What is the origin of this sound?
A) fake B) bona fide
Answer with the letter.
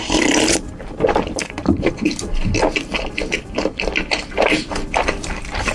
A